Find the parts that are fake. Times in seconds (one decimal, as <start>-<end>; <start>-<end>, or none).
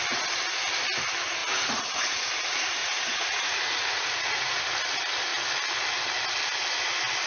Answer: 1.4-2.3; 2.8-4.6